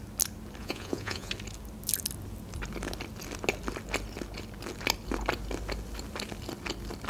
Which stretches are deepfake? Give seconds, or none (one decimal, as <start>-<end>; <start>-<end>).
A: 0.6-1.3